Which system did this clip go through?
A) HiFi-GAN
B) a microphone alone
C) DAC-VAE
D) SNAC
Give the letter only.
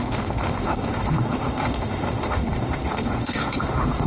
C